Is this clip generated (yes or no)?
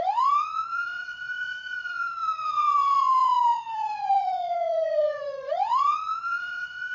yes